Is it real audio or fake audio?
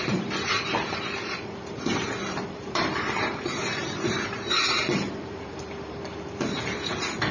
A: fake